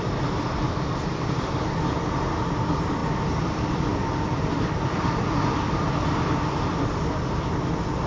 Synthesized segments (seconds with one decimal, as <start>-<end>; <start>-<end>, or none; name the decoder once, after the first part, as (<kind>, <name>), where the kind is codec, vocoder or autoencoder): 3.0-7.2 (vocoder, BigVGAN v2)